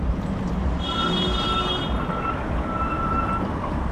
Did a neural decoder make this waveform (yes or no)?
no